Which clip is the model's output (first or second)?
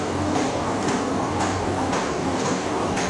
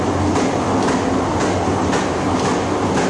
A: first